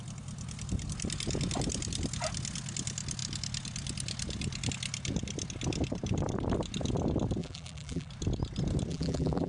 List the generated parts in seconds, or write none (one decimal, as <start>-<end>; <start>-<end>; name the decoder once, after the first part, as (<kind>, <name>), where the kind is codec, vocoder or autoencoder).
7.4-8.1 (vocoder, BigVGAN v2); 8.9-9.5